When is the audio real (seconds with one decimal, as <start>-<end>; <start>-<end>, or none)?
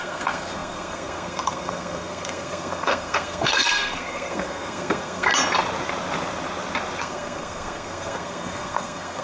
5.3-7.0